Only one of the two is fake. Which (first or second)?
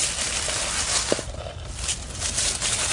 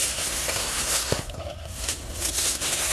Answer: second